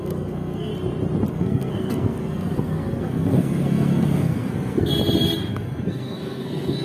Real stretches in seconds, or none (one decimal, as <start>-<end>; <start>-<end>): 0.7-1.3; 4.9-5.5